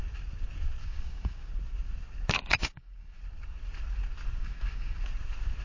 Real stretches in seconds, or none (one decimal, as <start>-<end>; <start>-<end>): 0.0-0.8; 1.5-2.5; 3.2-4.4; 5.0-5.6